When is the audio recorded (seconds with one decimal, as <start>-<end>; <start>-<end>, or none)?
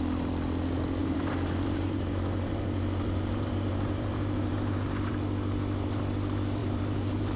0.0-1.0; 5.1-6.6